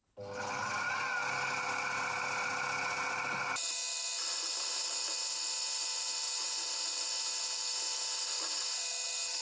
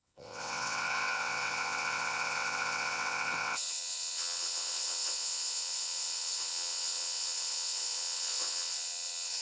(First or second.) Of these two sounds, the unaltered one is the first